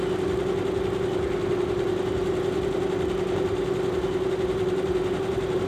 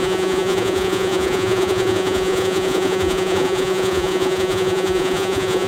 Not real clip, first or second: second